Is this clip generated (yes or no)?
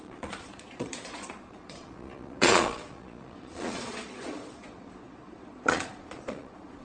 yes